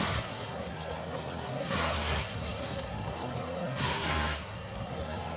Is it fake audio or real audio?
fake